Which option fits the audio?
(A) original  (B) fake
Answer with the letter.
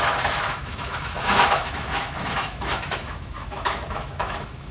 B